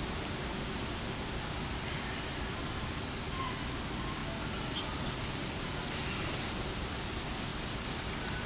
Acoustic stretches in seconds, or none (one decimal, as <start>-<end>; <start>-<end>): 0.0-7.5; 8.1-8.5